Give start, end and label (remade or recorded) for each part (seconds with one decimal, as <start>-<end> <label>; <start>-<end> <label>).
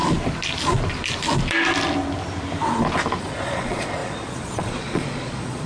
0.0-3.2 recorded; 3.2-5.7 remade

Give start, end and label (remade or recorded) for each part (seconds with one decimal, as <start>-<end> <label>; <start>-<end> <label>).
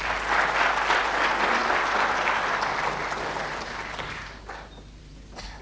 0.0-5.6 recorded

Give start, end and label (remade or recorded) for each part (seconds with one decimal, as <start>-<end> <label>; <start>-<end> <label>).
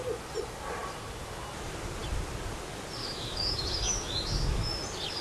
0.0-3.0 recorded; 3.0-4.7 remade; 4.7-5.2 recorded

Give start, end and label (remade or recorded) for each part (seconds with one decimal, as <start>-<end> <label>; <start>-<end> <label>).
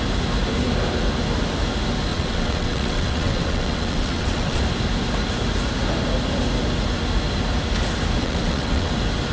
0.0-2.1 recorded; 2.1-4.6 remade; 4.6-8.2 recorded; 8.2-8.9 remade; 8.9-9.3 recorded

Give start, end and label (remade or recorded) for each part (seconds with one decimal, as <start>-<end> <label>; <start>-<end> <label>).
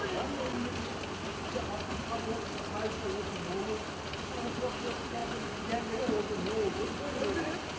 0.0-7.8 recorded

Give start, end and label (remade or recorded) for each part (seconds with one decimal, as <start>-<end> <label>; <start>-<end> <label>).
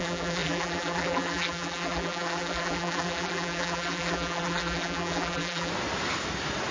0.0-5.7 remade; 5.7-6.7 recorded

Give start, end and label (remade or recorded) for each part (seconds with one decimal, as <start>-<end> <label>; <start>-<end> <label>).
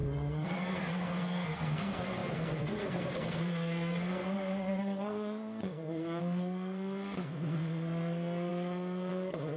0.0-9.6 remade